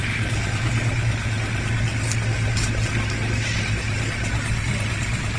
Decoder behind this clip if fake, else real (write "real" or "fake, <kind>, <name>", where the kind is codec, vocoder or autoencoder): real